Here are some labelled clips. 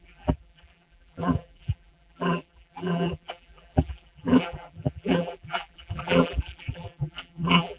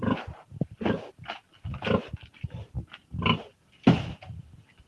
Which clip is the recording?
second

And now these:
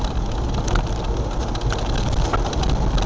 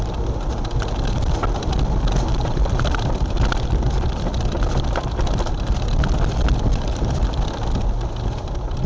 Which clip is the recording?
first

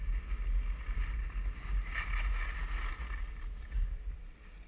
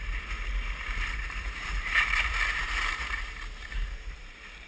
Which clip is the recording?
first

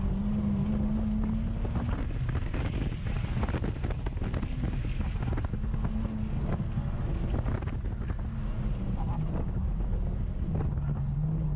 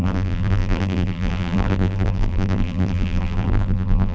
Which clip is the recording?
first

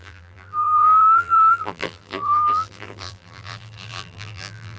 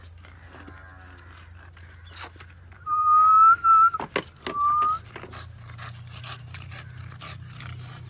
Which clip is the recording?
second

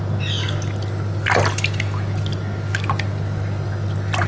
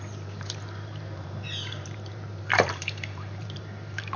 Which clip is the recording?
first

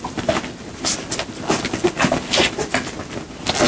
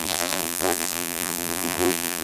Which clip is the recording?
first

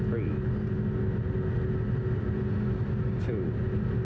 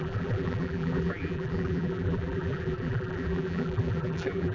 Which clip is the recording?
first